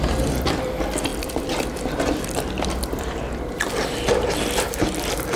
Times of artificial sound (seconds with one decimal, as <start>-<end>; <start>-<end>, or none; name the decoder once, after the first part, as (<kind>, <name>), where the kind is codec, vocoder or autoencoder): 0.0-5.4 (vocoder, BigVGAN v2)